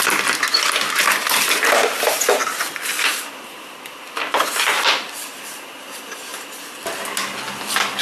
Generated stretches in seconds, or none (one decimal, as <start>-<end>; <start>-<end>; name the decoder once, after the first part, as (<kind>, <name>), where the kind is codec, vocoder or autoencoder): 1.2-5.8 (vocoder, BigVGAN v2)